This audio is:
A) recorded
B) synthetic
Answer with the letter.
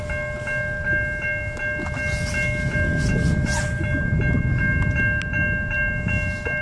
A